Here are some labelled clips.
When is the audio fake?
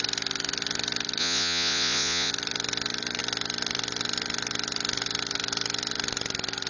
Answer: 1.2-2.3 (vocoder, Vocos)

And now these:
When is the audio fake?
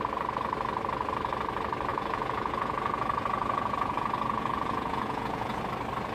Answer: 1.9-5.6 (vocoder, Vocos)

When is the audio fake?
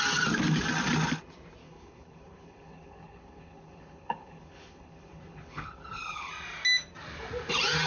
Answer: 1.6-6.3 (codec, HILCodec)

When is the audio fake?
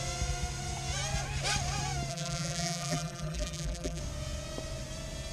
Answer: 2.1-4.0 (vocoder, BigVGAN v2)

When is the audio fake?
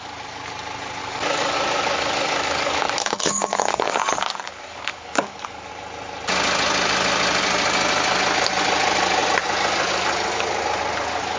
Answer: 1.0-5.7 (codec, DAC)